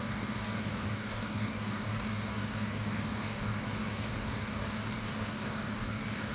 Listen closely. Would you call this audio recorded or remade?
remade